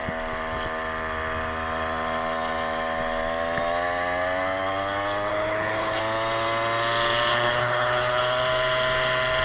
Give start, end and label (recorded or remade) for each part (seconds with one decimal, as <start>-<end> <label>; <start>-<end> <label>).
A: 0.0-5.3 recorded; 5.3-6.0 remade; 6.0-7.3 recorded; 7.3-8.2 remade; 8.2-9.4 recorded